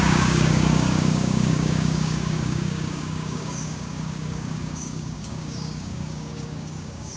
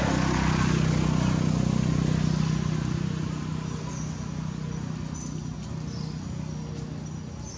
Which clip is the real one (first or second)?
second